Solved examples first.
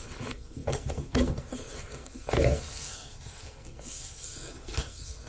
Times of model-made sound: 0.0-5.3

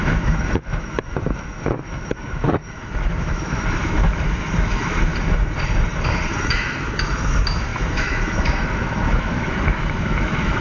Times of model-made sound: 0.0-5.1; 6.4-10.6

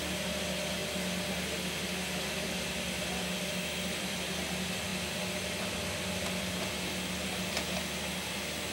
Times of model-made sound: none